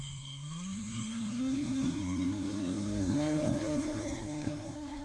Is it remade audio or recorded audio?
remade